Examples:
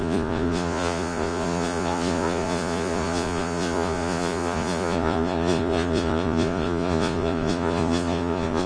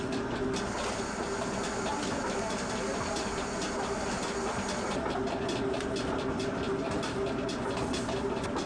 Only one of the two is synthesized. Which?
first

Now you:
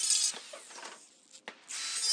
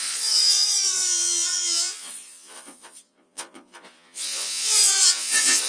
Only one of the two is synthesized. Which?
second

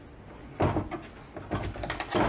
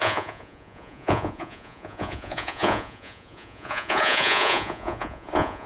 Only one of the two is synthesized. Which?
second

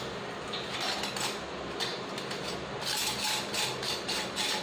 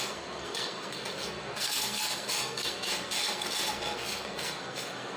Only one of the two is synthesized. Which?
second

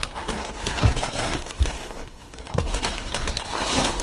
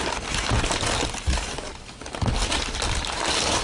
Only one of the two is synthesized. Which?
first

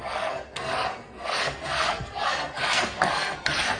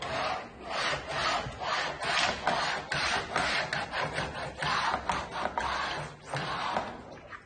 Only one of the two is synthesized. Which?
first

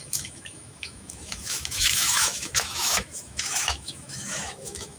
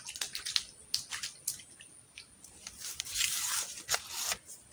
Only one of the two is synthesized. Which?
first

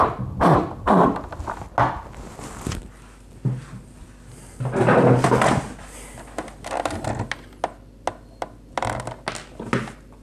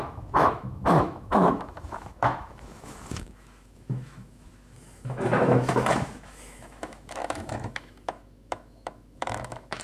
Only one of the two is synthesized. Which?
second